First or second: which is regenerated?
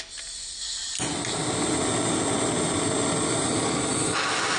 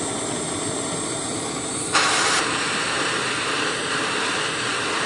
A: second